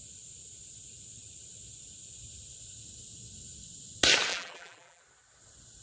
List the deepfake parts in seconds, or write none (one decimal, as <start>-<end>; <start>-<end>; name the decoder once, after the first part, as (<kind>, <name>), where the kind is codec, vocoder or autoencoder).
4.3-5.0 (vocoder, BigVGAN v2)